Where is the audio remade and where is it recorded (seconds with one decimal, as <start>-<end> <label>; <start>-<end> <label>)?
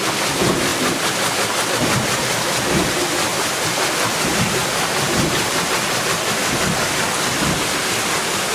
0.0-3.3 recorded; 3.3-3.9 remade; 3.9-4.3 recorded; 4.3-5.7 remade; 5.7-8.5 recorded